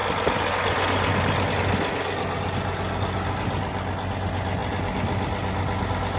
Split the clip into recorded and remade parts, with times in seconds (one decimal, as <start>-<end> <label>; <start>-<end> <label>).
0.0-6.2 recorded